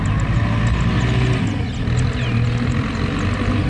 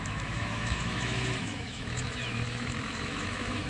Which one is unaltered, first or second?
first